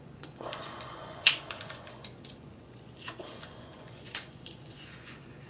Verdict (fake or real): fake